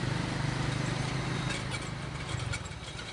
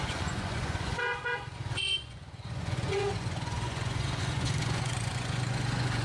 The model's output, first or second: second